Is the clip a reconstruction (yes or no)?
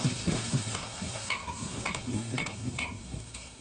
yes